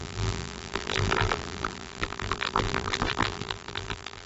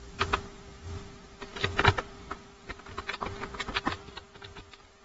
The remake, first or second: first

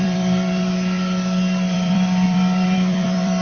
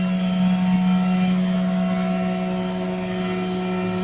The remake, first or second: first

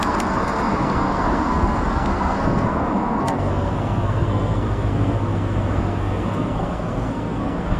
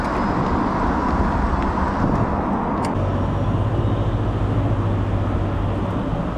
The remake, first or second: first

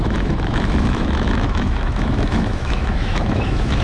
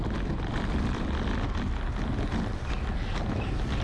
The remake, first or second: first